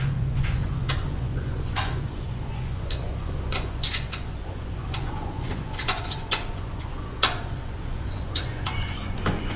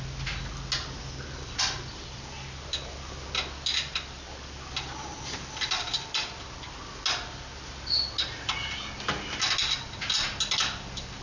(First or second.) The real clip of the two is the second